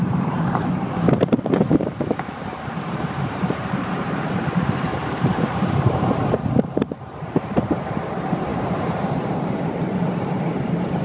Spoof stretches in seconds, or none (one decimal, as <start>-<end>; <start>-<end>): 0.0-11.0